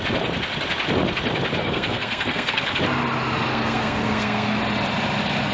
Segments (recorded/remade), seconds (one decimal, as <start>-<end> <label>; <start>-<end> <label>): 0.0-1.6 recorded; 1.6-2.8 remade; 2.8-3.5 recorded; 3.5-4.6 remade; 4.6-5.5 recorded

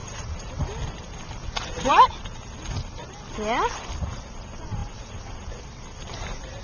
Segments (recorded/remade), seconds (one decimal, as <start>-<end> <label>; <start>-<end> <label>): 0.0-6.6 recorded

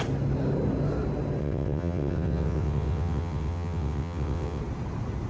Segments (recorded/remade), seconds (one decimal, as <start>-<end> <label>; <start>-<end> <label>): 0.0-1.4 recorded; 1.4-4.6 remade; 4.6-5.3 recorded

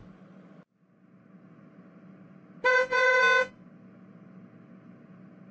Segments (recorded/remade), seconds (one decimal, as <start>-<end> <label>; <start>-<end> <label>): 0.0-2.7 recorded; 2.7-3.5 remade; 3.5-5.5 recorded

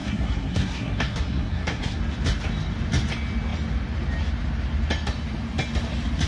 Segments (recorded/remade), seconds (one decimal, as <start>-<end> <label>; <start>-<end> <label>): 0.0-2.0 remade; 2.0-6.3 recorded

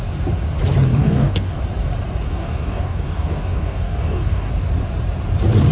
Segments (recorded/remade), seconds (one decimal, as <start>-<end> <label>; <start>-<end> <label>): 0.0-0.9 recorded; 0.9-1.6 remade; 1.6-2.3 recorded; 2.3-4.5 remade; 4.5-5.7 recorded

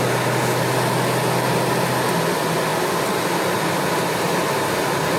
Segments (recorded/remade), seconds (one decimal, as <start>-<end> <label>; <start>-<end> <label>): 0.0-5.2 recorded